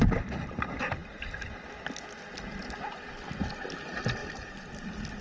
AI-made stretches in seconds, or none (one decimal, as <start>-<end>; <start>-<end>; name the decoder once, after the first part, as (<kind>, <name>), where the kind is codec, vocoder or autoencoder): 4.2-4.7 (vocoder, BigVGAN v2)